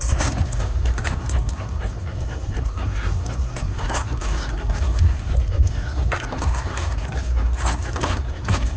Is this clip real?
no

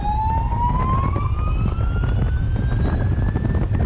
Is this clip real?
yes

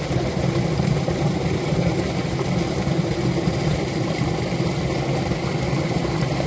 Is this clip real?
yes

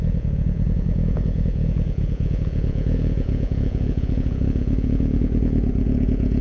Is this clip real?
no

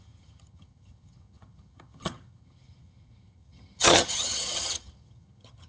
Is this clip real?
no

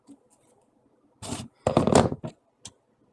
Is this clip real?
yes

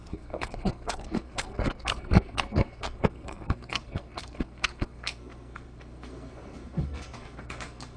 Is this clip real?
no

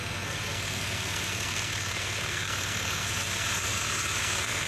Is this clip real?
no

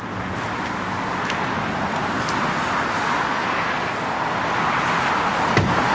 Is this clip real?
yes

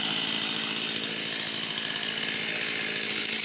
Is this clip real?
yes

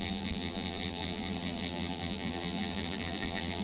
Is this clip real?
no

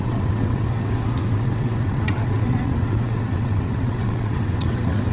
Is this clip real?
no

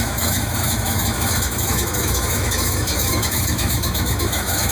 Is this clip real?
no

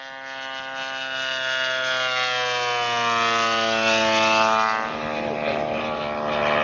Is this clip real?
yes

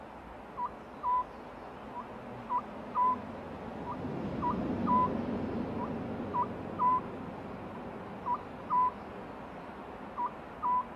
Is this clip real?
yes